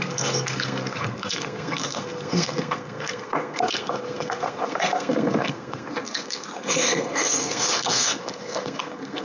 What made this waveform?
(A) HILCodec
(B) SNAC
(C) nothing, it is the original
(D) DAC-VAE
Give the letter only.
B